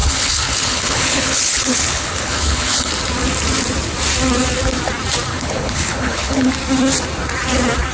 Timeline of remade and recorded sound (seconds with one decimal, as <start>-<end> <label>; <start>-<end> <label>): 0.0-2.9 remade; 2.9-5.3 recorded; 5.3-6.5 remade; 6.5-7.9 recorded